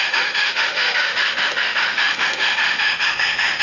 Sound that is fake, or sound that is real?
fake